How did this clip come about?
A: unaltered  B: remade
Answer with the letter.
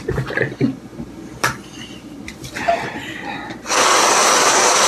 B